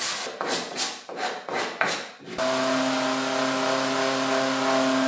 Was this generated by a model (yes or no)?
no